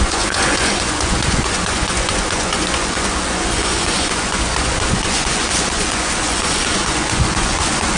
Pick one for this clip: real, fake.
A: fake